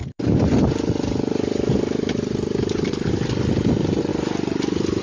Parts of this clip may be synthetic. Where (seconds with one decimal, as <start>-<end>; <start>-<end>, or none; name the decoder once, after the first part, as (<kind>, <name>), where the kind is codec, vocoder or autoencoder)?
none